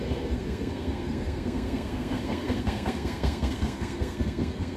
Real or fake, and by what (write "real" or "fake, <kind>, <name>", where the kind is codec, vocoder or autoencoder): fake, codec, SNAC